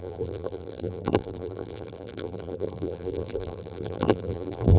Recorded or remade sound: remade